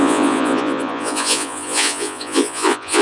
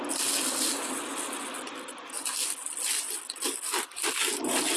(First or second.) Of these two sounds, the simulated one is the first